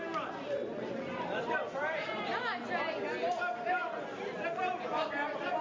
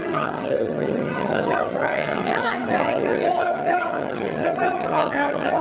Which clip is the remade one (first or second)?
second